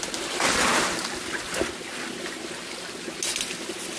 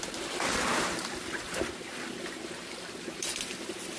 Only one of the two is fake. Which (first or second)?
second